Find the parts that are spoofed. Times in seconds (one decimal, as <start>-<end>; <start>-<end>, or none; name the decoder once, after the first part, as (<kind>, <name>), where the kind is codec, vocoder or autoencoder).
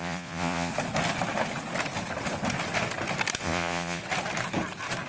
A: 0.0-0.7 (vocoder, Vocos); 3.4-4.0